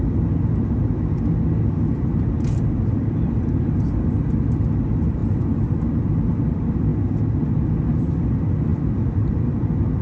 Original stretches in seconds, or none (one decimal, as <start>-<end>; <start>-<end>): 6.9-7.6